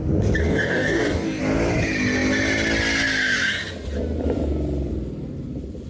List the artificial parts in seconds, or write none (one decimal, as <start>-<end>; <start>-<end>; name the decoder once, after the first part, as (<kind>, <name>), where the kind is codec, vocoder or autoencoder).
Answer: 0.4-1.4 (codec, DAC)